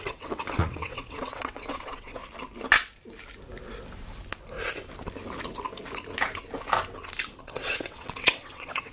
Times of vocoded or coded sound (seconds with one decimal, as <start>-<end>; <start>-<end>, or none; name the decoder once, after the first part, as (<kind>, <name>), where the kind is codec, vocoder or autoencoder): 0.0-2.2 (vocoder, WaveNeXt); 7.4-8.9